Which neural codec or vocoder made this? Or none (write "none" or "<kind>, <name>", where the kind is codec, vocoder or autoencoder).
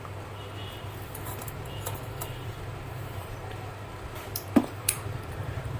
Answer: vocoder, BigVGAN v2